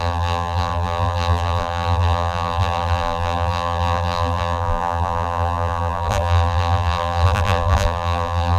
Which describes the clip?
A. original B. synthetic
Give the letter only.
B